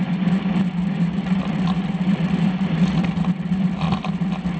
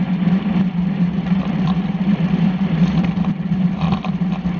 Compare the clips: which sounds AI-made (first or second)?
second